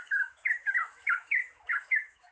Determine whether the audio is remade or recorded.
remade